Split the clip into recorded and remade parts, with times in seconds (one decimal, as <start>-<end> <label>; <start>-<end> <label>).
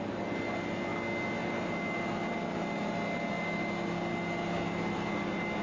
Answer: 0.0-5.6 recorded